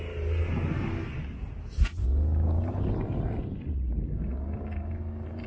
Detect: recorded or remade recorded